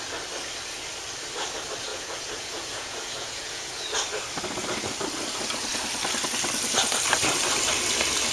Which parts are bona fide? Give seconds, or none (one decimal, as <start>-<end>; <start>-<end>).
0.0-1.9; 3.9-8.3